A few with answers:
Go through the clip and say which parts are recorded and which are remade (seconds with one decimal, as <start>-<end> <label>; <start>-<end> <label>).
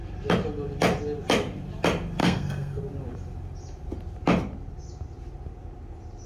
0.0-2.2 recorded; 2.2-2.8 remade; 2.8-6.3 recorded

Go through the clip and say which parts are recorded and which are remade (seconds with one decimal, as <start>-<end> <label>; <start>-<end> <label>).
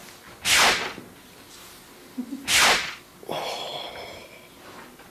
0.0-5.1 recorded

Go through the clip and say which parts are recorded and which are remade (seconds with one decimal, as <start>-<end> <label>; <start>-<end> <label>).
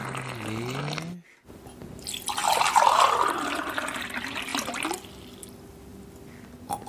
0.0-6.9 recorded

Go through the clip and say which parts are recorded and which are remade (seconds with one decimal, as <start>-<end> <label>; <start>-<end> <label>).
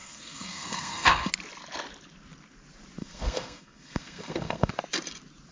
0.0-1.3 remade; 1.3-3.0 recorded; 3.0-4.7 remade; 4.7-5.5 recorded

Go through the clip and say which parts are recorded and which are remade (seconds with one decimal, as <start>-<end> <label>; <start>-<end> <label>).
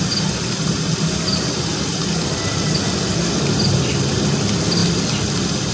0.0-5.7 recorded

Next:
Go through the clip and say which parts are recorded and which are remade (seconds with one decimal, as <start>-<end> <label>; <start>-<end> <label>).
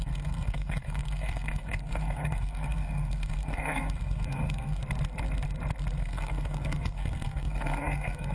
0.0-4.8 remade; 4.8-6.0 recorded; 6.0-8.3 remade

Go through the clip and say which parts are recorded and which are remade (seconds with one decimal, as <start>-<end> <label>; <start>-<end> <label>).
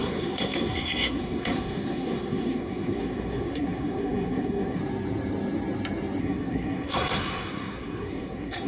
0.0-4.8 remade; 4.8-6.2 recorded; 6.2-8.7 remade